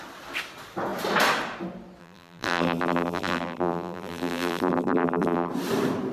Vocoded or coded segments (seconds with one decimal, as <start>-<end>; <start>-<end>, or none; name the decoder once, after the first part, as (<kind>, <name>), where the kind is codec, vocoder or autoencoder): 2.0-5.5 (vocoder, BigVGAN v2)